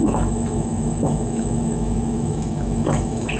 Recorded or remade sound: remade